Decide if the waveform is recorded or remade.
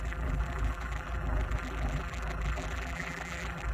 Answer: remade